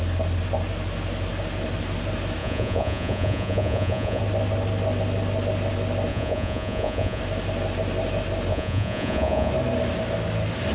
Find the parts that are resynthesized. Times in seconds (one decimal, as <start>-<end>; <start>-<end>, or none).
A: 2.4-4.2; 6.1-7.2; 8.5-9.5